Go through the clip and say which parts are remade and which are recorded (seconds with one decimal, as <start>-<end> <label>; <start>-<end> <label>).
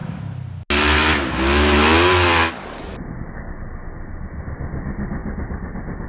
0.0-6.1 recorded